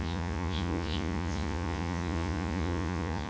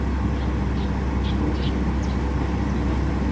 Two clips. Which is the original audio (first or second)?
second